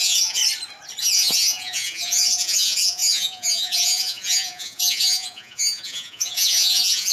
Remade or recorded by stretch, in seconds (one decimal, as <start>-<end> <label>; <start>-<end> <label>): 0.0-0.4 remade; 0.4-1.0 recorded; 1.0-7.1 remade

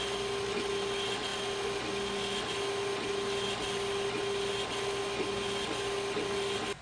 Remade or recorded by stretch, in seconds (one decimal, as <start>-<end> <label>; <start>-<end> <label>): 0.0-6.8 recorded

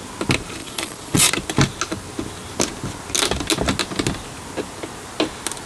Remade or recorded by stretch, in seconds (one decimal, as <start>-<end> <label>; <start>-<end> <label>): 0.0-0.6 recorded; 0.6-1.3 remade; 1.3-5.7 recorded

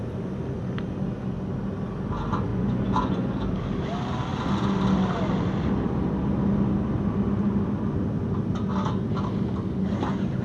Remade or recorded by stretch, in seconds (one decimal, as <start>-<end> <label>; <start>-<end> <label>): 0.0-2.5 recorded; 2.5-3.3 remade; 3.3-10.4 recorded

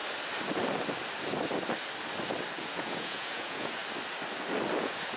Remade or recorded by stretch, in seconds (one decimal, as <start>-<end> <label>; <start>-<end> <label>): 0.0-2.6 recorded; 2.6-3.8 remade; 3.8-4.8 recorded; 4.8-5.2 remade